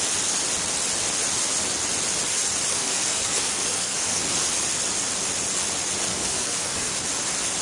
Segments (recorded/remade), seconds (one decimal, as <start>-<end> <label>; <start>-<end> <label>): 0.0-2.7 recorded; 2.7-4.2 remade; 4.2-6.1 recorded; 6.1-6.9 remade; 6.9-7.6 recorded